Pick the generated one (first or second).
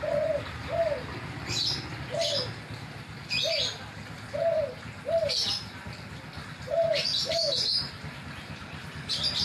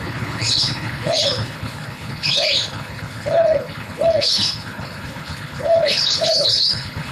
second